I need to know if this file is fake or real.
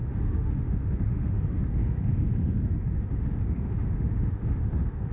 fake